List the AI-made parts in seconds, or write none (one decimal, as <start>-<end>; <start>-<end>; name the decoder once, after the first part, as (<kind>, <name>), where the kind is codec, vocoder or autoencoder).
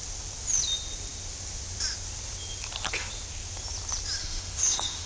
4.2-5.1 (autoencoder, DAC-VAE)